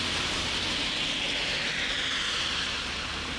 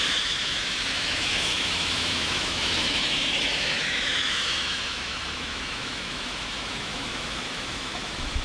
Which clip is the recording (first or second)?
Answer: first